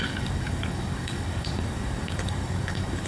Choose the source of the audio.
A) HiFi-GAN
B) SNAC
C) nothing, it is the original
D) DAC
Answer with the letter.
D